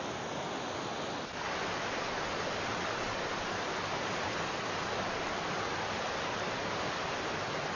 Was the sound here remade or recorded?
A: recorded